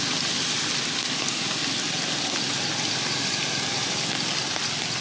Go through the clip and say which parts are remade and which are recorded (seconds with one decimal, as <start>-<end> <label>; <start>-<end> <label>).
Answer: 0.0-5.0 recorded